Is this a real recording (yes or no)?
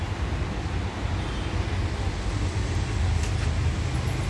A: yes